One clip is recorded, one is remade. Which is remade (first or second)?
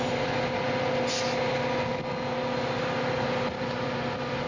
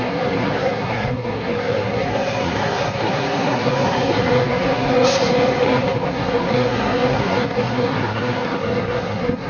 second